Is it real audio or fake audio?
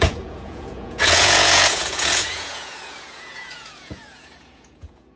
fake